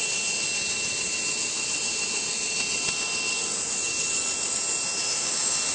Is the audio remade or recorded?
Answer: recorded